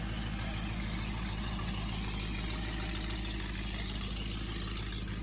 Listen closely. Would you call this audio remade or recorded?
recorded